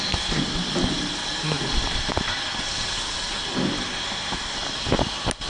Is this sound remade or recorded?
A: recorded